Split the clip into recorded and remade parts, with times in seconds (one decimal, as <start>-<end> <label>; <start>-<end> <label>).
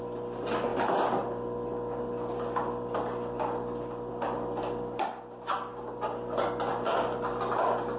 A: 0.0-8.0 recorded